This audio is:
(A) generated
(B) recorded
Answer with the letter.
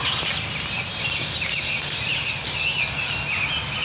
B